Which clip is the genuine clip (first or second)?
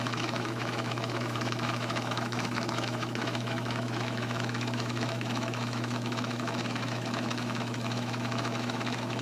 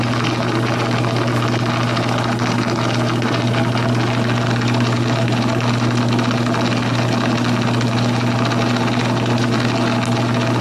second